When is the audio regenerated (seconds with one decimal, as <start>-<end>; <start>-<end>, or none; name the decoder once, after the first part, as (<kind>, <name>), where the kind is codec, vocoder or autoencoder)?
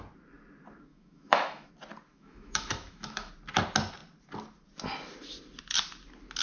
0.9-1.7 (autoencoder, DAC-VAE); 2.1-3.3